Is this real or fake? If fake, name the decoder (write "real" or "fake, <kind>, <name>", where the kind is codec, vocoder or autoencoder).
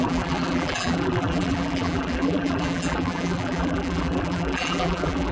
fake, vocoder, BigVGAN v2